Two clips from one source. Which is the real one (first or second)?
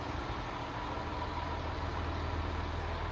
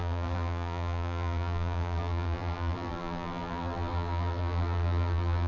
first